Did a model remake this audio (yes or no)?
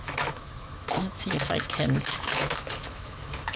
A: yes